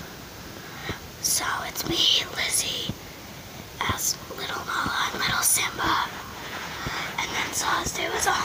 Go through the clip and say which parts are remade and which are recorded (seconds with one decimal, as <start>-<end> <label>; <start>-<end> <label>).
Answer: 0.0-6.4 recorded; 6.4-7.6 remade; 7.6-8.4 recorded